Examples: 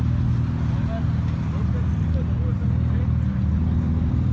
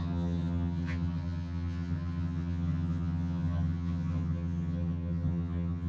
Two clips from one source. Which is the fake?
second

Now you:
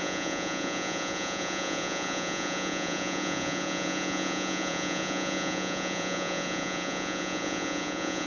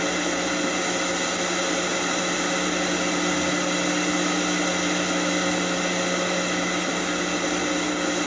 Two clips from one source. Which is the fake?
first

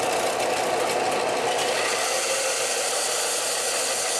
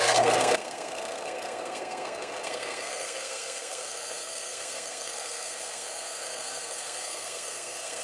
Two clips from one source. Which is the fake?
second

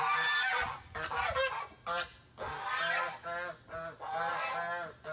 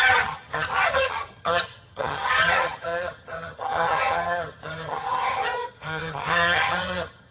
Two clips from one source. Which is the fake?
second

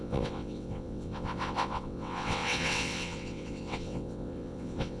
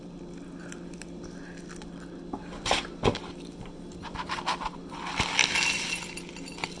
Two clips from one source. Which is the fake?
first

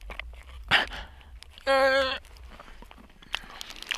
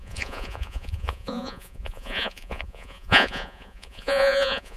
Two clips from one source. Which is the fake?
second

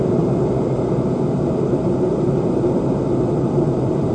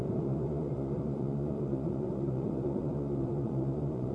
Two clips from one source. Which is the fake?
second